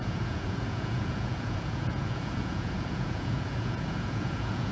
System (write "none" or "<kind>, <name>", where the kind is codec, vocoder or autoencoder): vocoder, Vocos